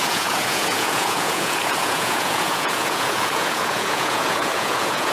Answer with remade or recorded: remade